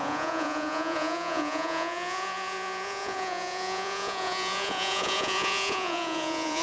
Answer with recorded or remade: remade